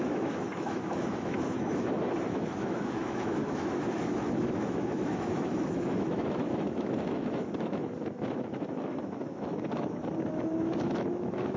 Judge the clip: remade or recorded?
remade